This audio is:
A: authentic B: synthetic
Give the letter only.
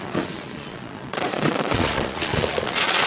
B